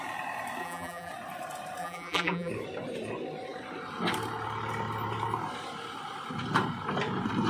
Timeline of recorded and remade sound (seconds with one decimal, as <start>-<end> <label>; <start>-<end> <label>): 0.0-0.6 recorded; 0.6-1.1 remade; 1.1-1.8 recorded; 1.8-2.5 remade; 2.5-7.5 recorded